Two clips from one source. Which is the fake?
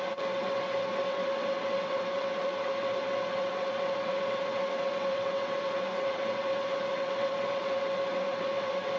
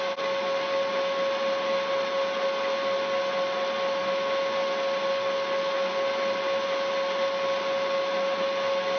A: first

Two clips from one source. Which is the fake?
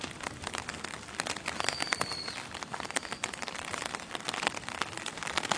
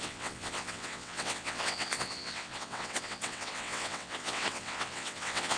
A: second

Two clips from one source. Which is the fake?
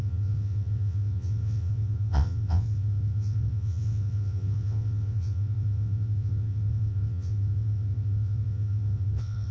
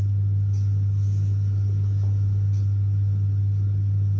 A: first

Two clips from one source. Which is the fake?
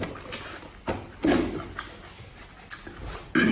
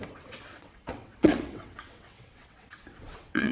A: second